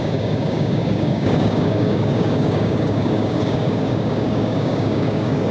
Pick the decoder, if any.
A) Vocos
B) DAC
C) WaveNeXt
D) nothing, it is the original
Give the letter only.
B